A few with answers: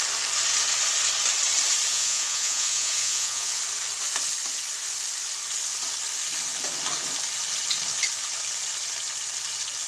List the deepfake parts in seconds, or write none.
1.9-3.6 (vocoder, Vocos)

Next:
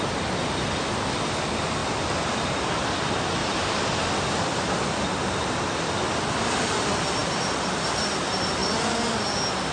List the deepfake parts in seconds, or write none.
none

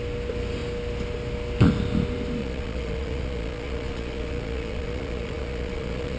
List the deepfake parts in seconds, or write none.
2.4-6.2 (vocoder, Vocos)

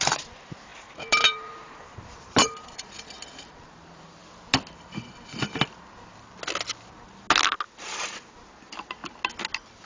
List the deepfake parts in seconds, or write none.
0.0-4.2 (vocoder, BigVGAN v2); 7.8-9.0

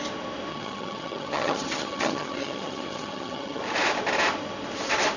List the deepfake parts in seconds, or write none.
0.5-3.6 (vocoder, HiFi-GAN)

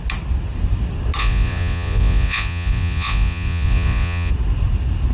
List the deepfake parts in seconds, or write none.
1.2-4.3 (vocoder, Vocos)